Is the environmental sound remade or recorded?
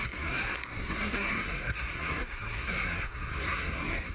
remade